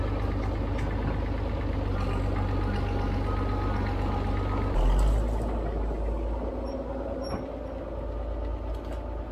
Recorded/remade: recorded